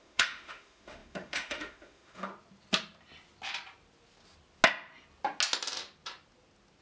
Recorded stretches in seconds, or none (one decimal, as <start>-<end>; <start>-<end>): 2.3-6.8